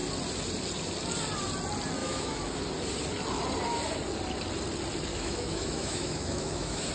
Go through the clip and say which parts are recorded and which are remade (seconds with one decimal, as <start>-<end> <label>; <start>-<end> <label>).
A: 0.0-2.0 recorded; 2.0-2.6 remade; 2.6-5.1 recorded; 5.1-6.9 remade